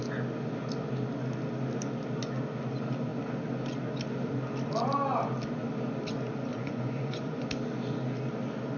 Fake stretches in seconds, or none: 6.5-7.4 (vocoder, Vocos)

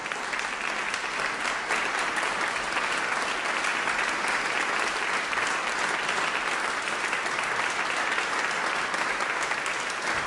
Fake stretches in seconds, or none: none

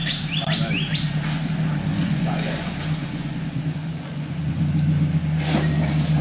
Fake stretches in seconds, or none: 1.9-4.6 (vocoder, Vocos)